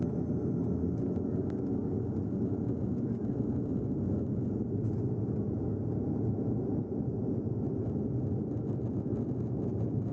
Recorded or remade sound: recorded